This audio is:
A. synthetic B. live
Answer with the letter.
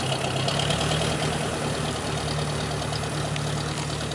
B